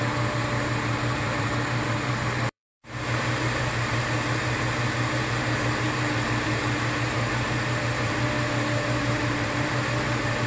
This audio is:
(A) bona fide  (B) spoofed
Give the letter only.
B